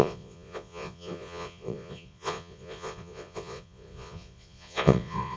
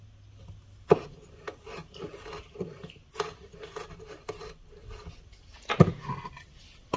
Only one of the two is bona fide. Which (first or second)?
second